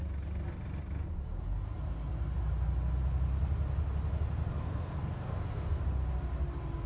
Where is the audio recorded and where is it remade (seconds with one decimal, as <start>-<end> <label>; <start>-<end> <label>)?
0.0-4.5 recorded; 4.5-5.8 remade; 5.8-6.9 recorded